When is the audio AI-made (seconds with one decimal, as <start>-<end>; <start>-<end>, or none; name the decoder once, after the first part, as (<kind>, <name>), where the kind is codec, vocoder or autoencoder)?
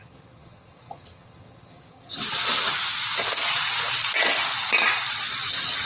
0.0-2.2 (vocoder, HiFi-GAN); 5.5-5.9